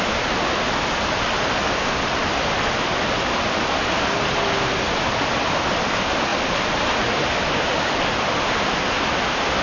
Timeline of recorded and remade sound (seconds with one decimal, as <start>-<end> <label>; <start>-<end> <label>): 0.0-9.6 recorded